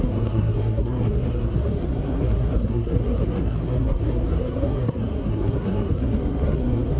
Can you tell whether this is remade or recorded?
remade